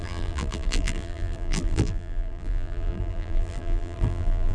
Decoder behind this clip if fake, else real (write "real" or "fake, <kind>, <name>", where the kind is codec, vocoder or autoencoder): fake, vocoder, BigVGAN v2